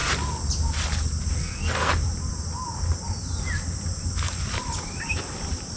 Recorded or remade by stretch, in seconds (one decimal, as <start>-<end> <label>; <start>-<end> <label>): 0.0-1.4 recorded; 1.4-1.9 remade; 1.9-5.8 recorded

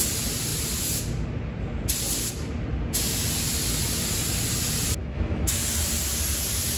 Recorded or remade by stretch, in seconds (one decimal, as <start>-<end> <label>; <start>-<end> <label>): 0.0-5.0 recorded; 5.0-5.5 remade; 5.5-6.8 recorded